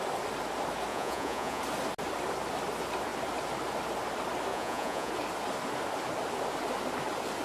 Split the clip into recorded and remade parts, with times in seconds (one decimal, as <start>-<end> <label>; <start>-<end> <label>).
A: 0.0-0.9 recorded; 0.9-1.6 remade; 1.6-4.5 recorded; 4.5-5.1 remade; 5.1-7.4 recorded